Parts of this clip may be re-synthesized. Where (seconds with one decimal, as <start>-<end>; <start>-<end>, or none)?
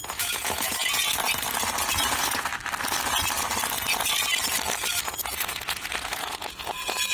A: 0.0-1.0; 1.9-2.5; 5.0-7.1